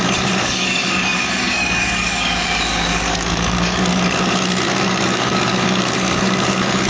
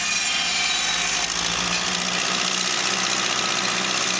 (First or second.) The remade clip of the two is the first